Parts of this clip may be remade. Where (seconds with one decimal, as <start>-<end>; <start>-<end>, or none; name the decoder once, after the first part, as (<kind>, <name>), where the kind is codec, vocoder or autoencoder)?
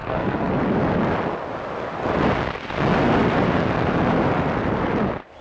0.0-0.5 (codec, SNAC)